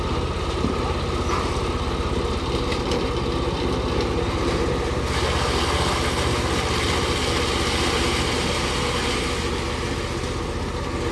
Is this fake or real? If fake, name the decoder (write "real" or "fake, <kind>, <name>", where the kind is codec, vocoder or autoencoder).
real